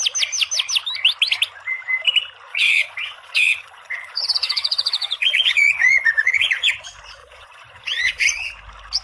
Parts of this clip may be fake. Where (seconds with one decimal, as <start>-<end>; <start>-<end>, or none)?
2.5-6.7; 7.2-8.5